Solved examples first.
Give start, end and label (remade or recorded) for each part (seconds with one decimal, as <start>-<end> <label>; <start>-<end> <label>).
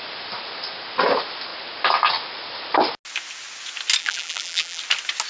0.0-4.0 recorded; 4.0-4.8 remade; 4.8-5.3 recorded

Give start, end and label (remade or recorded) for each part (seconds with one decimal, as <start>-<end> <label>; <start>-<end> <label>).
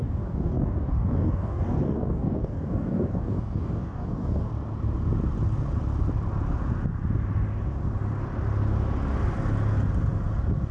0.0-4.5 remade; 4.5-10.7 recorded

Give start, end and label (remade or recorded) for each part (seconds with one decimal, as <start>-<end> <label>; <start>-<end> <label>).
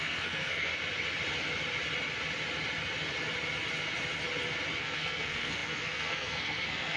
0.0-0.7 remade; 0.7-4.8 recorded; 4.8-7.0 remade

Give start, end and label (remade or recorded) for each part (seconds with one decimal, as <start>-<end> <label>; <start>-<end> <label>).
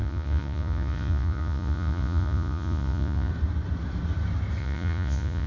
0.0-3.3 remade; 3.3-4.6 recorded; 4.6-5.5 remade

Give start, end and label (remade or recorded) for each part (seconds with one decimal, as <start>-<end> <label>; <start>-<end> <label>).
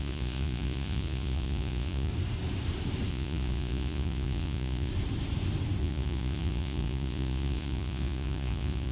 0.0-2.1 remade; 2.1-3.1 recorded; 3.1-4.9 remade; 4.9-5.8 recorded; 5.8-8.9 remade